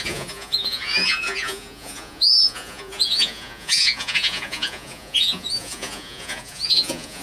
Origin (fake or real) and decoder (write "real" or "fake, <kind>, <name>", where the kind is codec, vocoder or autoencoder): fake, vocoder, Vocos